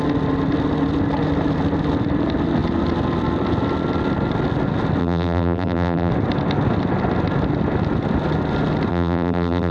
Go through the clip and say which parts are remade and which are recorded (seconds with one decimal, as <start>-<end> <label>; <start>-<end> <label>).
0.0-5.0 recorded; 5.0-6.1 remade; 6.1-8.9 recorded; 8.9-9.7 remade